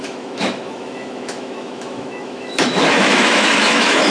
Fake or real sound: fake